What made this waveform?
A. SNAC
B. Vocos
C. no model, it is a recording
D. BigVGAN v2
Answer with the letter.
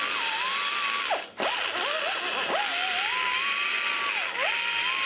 C